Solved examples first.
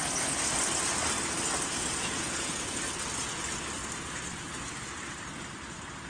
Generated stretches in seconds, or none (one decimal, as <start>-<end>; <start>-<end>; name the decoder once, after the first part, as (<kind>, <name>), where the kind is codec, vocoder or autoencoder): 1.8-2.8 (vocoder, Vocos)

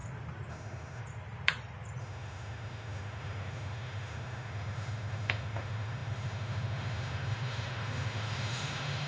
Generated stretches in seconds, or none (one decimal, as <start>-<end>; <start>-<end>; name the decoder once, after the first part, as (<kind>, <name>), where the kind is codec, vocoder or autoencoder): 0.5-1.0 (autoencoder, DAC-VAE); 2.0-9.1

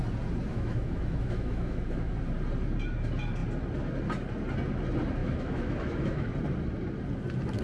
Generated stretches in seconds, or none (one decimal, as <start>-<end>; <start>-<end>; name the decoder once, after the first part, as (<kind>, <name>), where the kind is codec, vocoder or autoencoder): 0.5-2.1 (autoencoder, DAC-VAE); 5.2-6.3

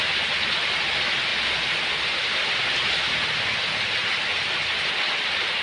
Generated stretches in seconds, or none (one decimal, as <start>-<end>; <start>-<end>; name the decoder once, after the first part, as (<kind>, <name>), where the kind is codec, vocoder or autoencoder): none

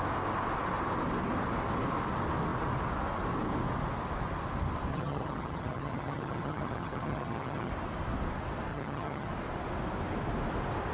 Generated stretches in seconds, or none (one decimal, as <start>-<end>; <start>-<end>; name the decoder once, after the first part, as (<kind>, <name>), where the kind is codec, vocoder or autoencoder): 4.9-7.7 (vocoder, HiFi-GAN); 8.7-9.3

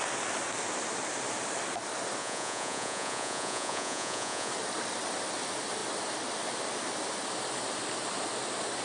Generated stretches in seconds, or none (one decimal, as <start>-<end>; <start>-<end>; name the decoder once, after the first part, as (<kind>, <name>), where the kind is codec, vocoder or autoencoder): 2.2-4.5 (vocoder, Vocos)

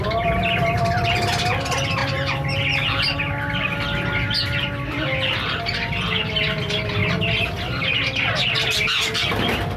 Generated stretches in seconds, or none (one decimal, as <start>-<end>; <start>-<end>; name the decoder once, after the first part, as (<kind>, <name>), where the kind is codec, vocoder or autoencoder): none